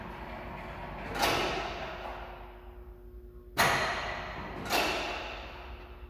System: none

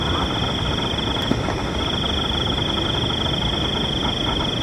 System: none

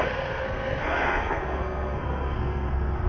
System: codec, SNAC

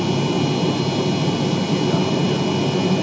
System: none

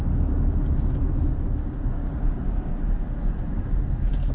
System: none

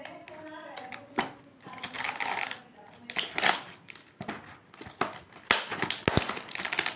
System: none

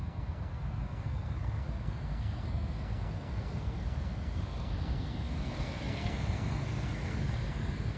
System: codec, SNAC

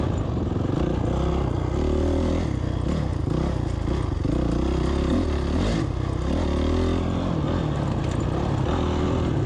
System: none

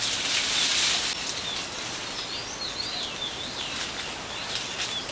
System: none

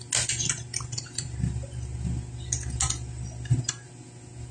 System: none